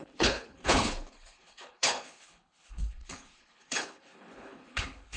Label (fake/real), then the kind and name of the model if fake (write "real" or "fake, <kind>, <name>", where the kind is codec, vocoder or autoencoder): fake, codec, HILCodec